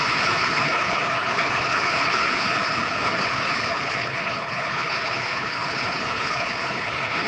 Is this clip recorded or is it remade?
remade